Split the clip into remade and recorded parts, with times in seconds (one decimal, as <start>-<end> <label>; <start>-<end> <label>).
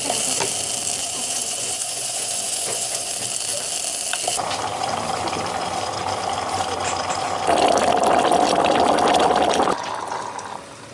0.0-1.0 recorded; 1.0-3.1 remade; 3.1-10.9 recorded